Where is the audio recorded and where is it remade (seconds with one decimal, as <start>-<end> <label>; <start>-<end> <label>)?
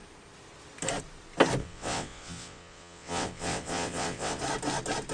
0.0-1.6 recorded; 1.6-4.4 remade; 4.4-5.1 recorded